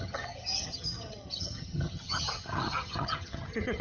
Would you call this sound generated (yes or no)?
yes